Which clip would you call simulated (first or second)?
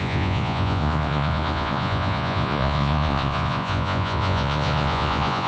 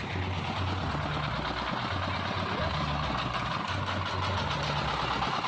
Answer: first